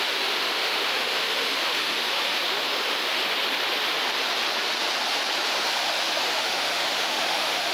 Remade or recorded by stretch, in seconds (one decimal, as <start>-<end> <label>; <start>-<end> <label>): 0.0-3.2 remade; 3.2-5.6 recorded; 5.6-7.7 remade